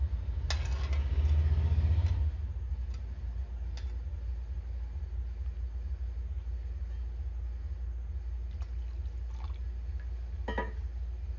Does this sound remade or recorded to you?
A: recorded